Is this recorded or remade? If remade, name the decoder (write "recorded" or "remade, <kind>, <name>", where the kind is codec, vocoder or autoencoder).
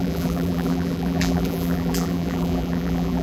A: remade, vocoder, BigVGAN v2